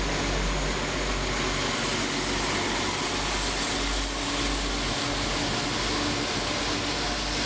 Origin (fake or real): real